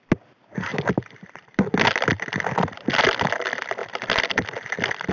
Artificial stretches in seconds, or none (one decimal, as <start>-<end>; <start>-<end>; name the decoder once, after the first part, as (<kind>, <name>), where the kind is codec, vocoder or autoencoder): 0.7-1.7 (vocoder, BigVGAN v2)